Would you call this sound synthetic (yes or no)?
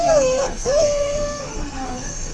yes